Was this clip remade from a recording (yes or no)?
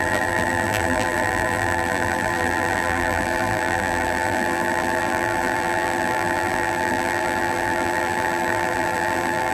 yes